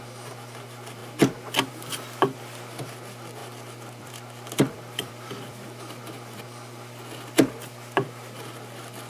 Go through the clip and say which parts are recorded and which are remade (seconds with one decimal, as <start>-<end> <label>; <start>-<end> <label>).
0.0-3.4 recorded; 3.4-6.4 remade; 6.4-9.1 recorded